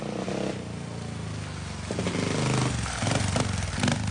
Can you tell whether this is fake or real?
real